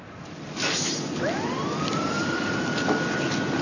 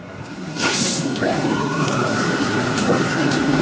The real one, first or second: first